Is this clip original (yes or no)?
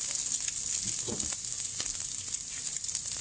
yes